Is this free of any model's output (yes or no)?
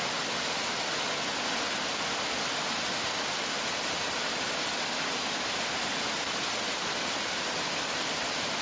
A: yes